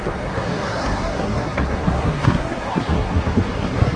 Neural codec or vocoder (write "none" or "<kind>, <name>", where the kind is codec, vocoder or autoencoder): codec, SNAC